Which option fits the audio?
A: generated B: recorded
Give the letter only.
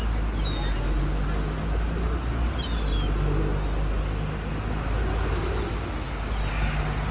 B